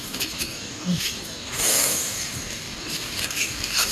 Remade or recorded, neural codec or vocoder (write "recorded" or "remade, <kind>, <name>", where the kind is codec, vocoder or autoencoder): remade, codec, DAC